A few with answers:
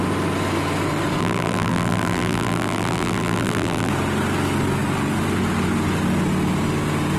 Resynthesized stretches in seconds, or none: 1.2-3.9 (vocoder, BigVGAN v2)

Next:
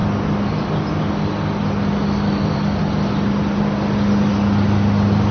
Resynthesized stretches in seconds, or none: none

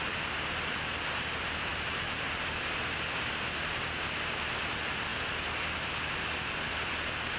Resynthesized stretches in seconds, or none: 1.7-2.8 (vocoder, BigVGAN v2)

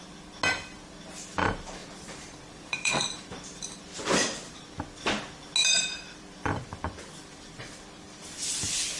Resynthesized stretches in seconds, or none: 1.8-2.9 (vocoder, BigVGAN v2); 5.6-8.2

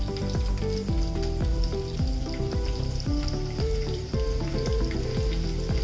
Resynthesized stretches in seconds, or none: 1.5-5.0 (vocoder, BigVGAN v2)